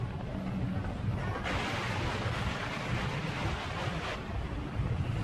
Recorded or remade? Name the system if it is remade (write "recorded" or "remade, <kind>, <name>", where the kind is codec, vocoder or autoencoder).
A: remade, vocoder, BigVGAN v2